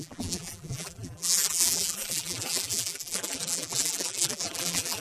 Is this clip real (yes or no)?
no